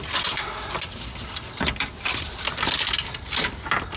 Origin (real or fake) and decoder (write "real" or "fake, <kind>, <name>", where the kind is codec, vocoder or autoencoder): real